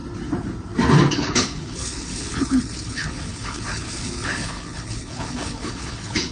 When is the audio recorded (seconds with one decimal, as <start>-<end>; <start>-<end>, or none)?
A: 0.0-1.1